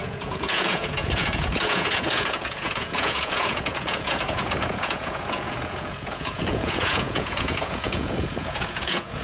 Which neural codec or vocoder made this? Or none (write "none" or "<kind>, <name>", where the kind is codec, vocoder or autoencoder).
vocoder, Vocos